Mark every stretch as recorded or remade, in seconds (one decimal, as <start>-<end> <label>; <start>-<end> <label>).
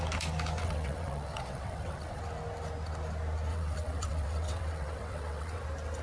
0.0-0.6 recorded; 0.6-2.2 remade; 2.2-3.5 recorded; 3.5-5.6 remade; 5.6-6.0 recorded